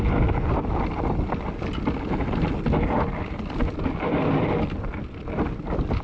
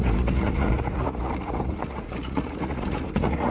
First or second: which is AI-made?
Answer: second